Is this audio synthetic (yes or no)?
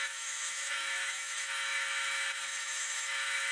yes